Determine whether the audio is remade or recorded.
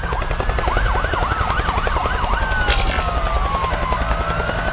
recorded